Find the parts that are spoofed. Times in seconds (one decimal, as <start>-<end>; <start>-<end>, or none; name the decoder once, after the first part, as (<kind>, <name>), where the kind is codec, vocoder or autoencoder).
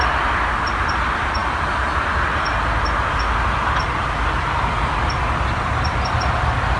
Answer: 0.0-1.4 (vocoder, BigVGAN v2); 5.5-6.8